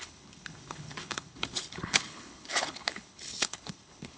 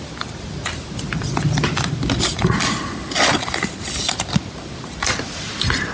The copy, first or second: first